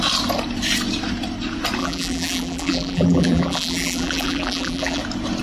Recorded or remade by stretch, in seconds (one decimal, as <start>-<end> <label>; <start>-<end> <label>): 0.0-1.8 recorded; 1.8-5.0 remade; 5.0-5.4 recorded